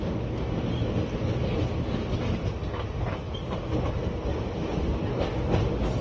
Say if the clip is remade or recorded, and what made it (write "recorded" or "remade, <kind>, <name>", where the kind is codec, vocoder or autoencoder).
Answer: recorded